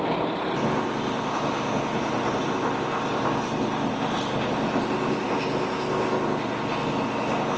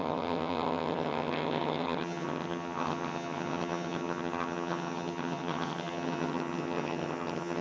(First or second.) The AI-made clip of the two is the second